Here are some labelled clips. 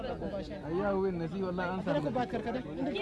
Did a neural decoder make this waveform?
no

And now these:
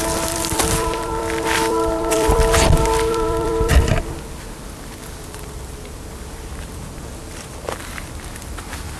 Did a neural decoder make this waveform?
yes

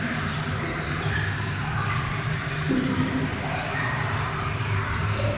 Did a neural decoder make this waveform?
no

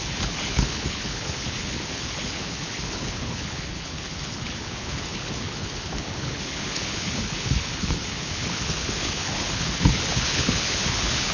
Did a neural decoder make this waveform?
yes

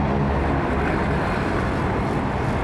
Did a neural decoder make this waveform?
yes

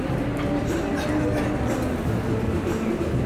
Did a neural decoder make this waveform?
no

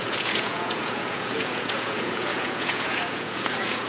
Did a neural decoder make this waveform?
yes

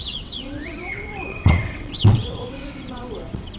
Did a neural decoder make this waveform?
yes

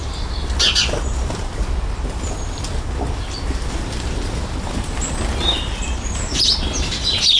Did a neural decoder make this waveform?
yes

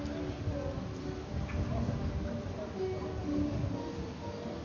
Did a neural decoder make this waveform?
no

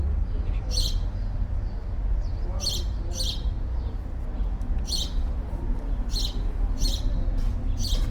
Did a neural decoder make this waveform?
no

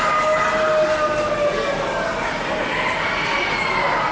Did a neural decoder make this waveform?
no